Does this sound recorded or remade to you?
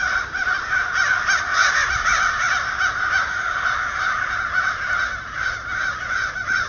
recorded